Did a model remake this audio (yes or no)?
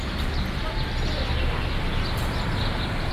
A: no